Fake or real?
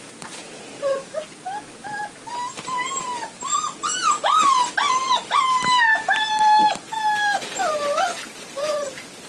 real